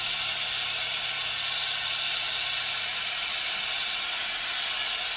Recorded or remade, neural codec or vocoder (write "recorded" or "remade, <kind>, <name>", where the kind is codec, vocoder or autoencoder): recorded